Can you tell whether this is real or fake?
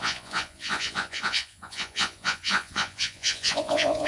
fake